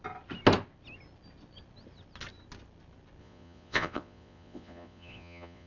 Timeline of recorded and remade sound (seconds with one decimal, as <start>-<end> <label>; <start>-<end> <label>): 0.0-3.2 recorded; 3.2-5.7 remade